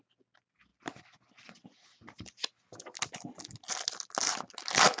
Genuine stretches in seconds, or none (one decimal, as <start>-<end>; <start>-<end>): 0.0-5.0